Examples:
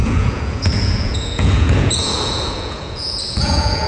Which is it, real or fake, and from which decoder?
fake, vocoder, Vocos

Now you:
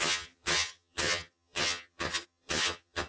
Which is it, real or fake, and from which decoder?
fake, vocoder, HiFi-GAN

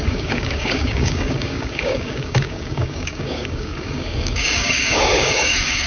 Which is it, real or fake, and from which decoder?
fake, codec, DAC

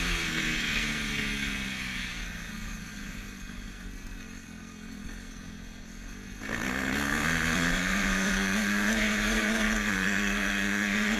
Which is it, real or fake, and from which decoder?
fake, codec, SNAC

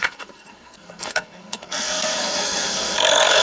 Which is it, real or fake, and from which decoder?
fake, codec, SNAC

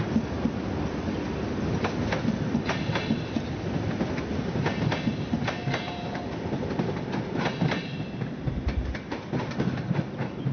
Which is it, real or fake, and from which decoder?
real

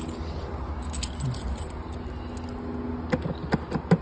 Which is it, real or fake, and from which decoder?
real